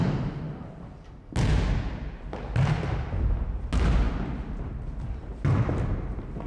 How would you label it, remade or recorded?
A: recorded